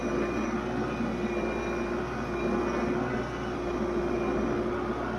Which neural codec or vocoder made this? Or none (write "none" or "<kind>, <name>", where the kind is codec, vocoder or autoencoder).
none